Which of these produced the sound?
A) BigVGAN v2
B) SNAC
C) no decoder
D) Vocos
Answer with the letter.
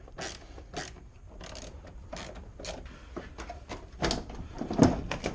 C